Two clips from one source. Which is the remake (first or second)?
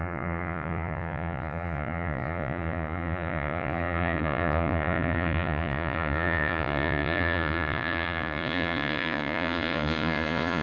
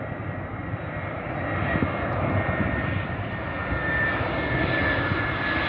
first